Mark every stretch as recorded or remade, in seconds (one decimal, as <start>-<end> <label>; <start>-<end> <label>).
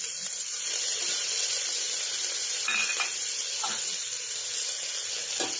0.0-5.6 recorded